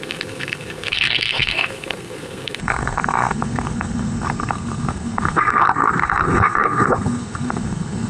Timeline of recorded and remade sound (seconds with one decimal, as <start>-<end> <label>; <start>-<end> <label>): 0.0-8.1 remade